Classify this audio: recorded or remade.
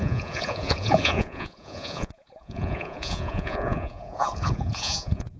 remade